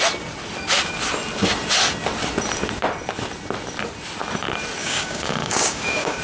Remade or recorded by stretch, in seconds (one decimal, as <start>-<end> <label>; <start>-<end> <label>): 0.0-4.8 recorded; 4.8-6.2 remade